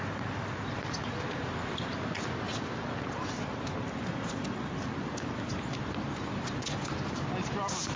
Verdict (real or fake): real